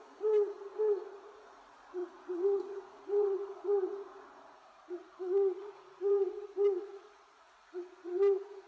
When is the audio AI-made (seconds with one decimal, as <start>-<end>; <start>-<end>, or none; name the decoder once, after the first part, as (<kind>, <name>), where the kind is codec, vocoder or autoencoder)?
0.0-8.7 (vocoder, Vocos)